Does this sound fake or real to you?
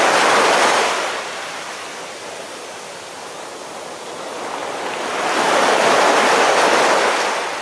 real